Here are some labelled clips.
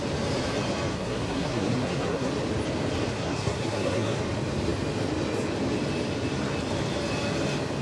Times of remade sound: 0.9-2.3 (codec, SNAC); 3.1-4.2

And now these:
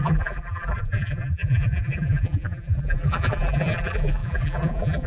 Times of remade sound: 0.0-5.1 (vocoder, BigVGAN v2)

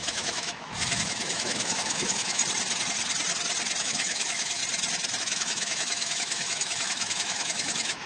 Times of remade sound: 0.0-2.4 (autoencoder, DAC-VAE); 3.8-4.6; 5.2-8.1

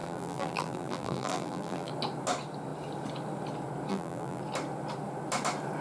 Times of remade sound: 0.0-1.9 (vocoder, BigVGAN v2); 3.9-4.4

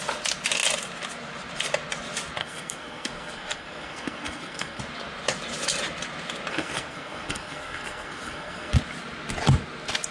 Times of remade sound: 2.4-4.8 (codec, SNAC); 6.5-8.7